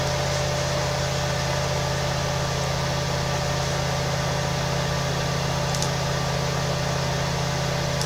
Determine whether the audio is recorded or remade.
recorded